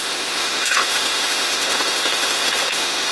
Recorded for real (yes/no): no